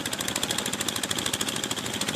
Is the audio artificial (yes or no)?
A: no